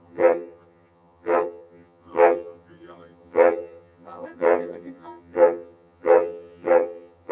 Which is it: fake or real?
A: fake